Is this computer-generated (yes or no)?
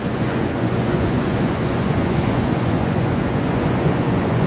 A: yes